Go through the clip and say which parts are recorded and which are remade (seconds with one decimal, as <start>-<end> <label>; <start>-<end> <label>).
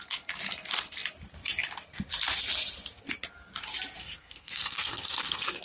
0.0-4.0 recorded; 4.0-5.6 remade